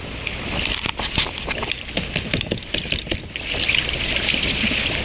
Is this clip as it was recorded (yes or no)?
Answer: no